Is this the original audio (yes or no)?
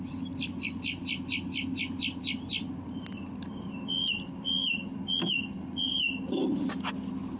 yes